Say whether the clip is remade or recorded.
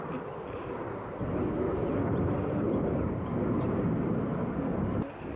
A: recorded